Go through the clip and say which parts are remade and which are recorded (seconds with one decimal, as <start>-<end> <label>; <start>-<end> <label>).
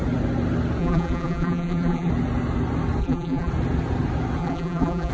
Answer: 0.0-0.8 recorded; 0.8-2.1 remade; 2.1-3.0 recorded; 3.0-3.5 remade; 3.5-4.4 recorded; 4.4-5.1 remade